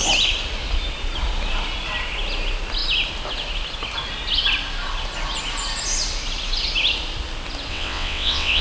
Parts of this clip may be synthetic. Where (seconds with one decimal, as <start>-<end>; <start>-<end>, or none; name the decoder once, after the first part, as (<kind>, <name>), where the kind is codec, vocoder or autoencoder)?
7.7-8.6 (vocoder, WaveNeXt)